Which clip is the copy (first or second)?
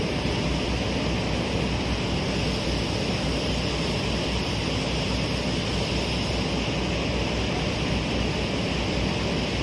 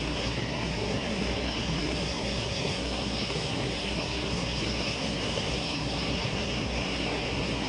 second